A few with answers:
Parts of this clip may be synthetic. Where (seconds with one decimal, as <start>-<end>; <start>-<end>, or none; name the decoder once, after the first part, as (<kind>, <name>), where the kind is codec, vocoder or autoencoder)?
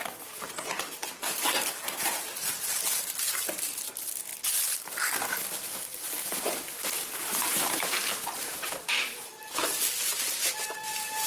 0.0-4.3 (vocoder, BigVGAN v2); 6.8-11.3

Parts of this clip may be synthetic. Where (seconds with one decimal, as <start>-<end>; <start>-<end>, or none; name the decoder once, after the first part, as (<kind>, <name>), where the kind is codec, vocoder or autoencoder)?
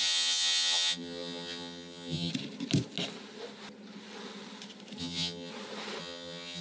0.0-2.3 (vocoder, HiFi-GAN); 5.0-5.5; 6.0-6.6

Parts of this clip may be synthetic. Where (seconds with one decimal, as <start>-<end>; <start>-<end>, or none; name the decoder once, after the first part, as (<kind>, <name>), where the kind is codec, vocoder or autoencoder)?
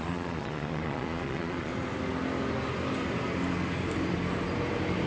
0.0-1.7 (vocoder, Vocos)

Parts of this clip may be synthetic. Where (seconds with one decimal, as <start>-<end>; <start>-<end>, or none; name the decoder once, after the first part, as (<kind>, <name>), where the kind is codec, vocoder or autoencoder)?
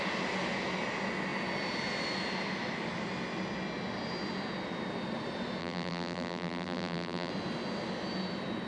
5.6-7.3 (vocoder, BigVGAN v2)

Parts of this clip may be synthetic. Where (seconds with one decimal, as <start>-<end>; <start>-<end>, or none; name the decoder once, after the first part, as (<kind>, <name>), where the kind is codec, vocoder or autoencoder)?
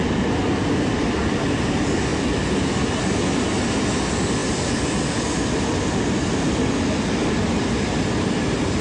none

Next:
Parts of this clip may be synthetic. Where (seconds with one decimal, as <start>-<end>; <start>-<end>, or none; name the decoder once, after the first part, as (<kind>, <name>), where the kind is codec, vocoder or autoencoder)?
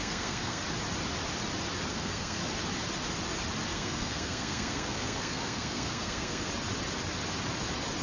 0.0-0.6 (codec, SNAC); 1.9-2.4; 3.7-6.5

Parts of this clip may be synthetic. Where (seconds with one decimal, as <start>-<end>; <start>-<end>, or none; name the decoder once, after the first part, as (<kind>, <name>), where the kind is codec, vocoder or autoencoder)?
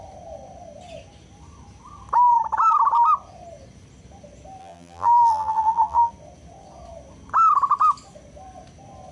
4.6-6.1 (vocoder, BigVGAN v2)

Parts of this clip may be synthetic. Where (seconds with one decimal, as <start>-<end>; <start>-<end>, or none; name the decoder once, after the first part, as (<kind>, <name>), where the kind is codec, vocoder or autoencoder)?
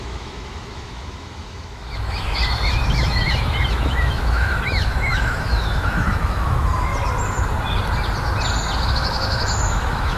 0.0-6.9 (autoencoder, DAC-VAE); 8.8-10.2